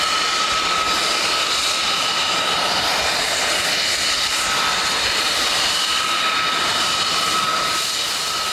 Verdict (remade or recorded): recorded